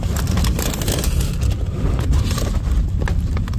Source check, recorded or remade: recorded